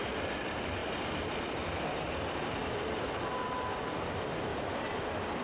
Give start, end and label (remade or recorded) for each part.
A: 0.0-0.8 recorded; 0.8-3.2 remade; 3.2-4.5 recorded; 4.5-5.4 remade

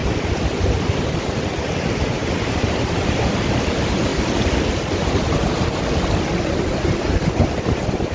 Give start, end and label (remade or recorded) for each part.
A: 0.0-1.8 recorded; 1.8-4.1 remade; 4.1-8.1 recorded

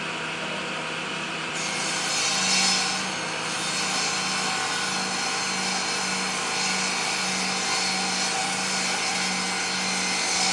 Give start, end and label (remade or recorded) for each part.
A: 0.0-1.1 recorded; 1.1-2.1 remade; 2.1-10.5 recorded